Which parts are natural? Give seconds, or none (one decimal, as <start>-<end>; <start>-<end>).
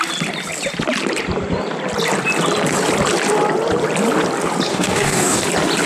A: 0.0-4.7; 5.4-5.9